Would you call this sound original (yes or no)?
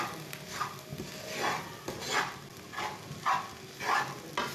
yes